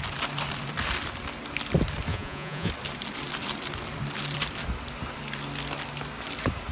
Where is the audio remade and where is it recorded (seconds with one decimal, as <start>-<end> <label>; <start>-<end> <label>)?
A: 0.0-2.1 recorded; 2.1-2.7 remade; 2.7-6.7 recorded